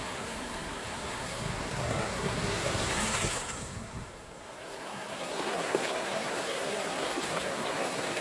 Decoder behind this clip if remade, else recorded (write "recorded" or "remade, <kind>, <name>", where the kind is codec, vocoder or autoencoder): remade, codec, SNAC